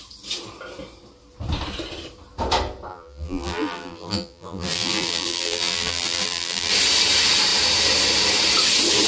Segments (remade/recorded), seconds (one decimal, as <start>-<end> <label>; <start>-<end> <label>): 0.0-2.9 recorded; 2.9-6.7 remade; 6.7-9.1 recorded